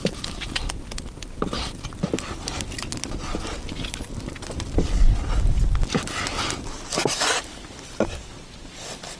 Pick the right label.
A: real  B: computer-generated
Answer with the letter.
A